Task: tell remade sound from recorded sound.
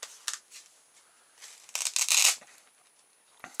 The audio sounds recorded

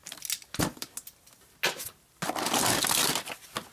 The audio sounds recorded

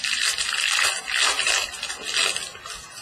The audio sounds recorded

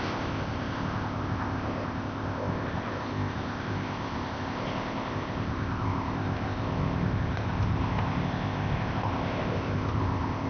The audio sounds remade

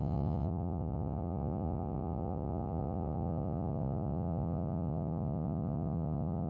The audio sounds remade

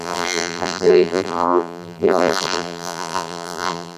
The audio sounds remade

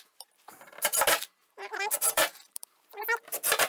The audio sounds remade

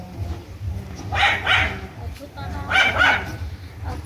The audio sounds recorded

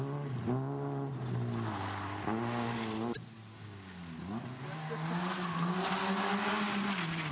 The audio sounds recorded